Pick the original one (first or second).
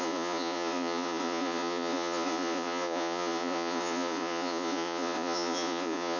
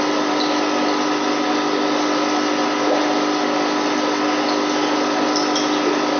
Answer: second